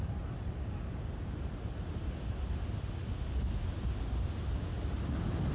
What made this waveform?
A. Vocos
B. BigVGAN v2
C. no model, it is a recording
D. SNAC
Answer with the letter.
C